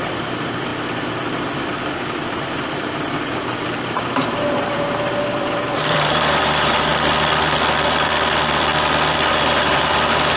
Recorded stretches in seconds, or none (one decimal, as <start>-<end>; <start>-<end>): 0.7-2.3; 6.9-9.3